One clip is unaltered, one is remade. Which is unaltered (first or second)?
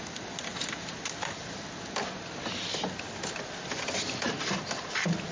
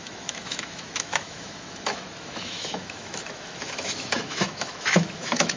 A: first